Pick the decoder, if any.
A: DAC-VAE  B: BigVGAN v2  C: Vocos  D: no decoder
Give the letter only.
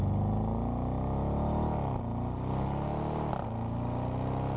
D